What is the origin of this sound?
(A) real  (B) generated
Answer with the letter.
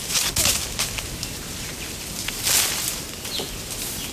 A